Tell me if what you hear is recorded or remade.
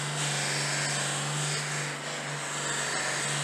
recorded